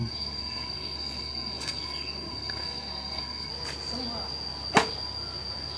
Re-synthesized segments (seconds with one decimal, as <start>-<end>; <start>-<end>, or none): 0.0-3.5